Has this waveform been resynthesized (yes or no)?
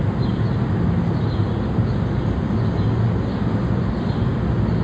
no